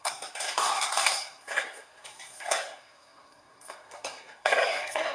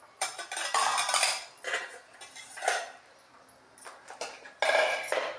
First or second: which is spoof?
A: first